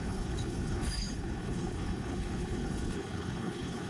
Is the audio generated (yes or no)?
yes